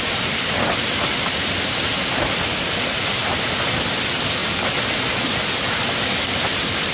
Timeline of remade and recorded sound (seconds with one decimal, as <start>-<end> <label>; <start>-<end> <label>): 0.0-6.9 recorded